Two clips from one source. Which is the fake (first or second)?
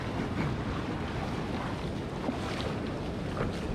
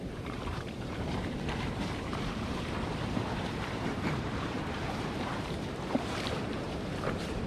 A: second